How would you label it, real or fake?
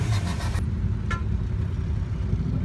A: real